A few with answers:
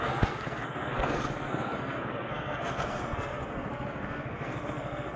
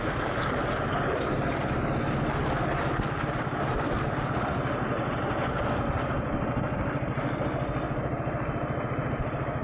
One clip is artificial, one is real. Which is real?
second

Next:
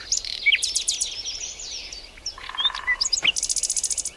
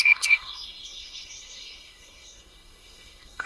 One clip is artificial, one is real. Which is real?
first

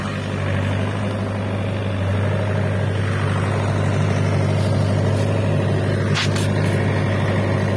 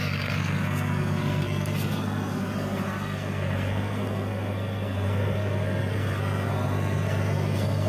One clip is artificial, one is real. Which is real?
first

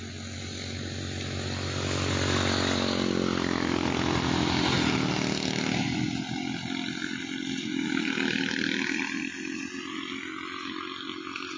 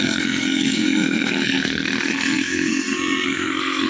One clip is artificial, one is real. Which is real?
first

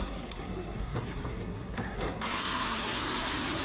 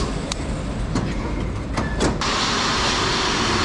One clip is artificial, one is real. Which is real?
second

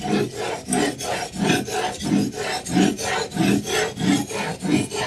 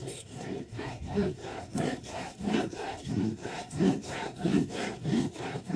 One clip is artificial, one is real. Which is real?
first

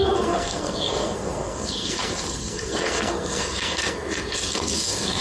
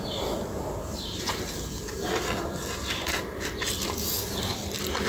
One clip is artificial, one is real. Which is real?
second